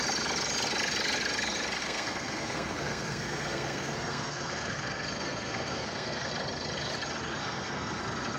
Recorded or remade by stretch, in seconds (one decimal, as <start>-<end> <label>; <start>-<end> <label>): 0.0-1.8 recorded; 1.8-6.3 remade; 6.3-7.4 recorded; 7.4-8.0 remade; 8.0-8.4 recorded